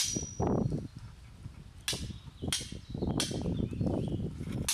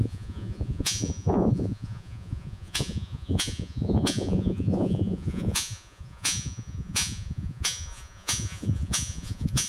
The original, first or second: first